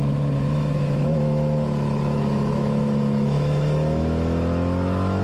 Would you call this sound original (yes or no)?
no